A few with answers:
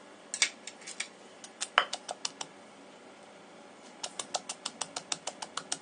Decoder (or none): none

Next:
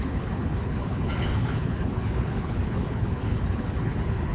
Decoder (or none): codec, HILCodec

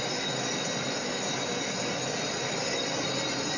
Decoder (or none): none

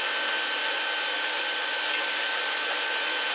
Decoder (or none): none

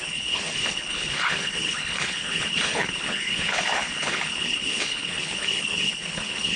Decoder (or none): codec, HILCodec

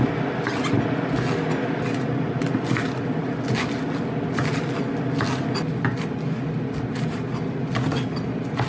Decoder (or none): none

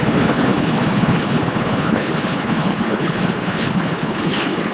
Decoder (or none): codec, HILCodec